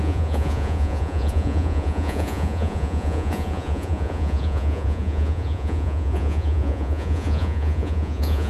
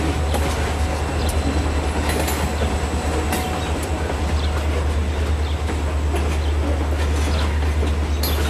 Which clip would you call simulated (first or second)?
first